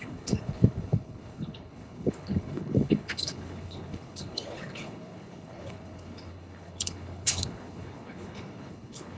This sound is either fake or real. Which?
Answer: fake